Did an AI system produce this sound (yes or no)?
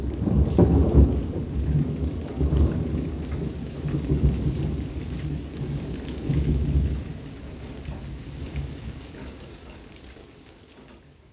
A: yes